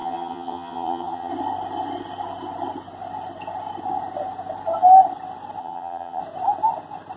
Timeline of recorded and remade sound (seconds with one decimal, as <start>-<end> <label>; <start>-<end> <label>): 0.0-1.3 remade; 1.3-5.6 recorded; 5.6-6.2 remade; 6.2-7.2 recorded